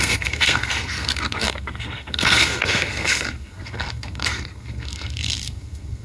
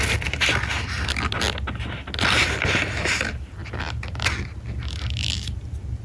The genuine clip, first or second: second